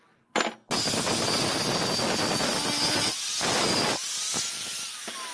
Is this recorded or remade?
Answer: recorded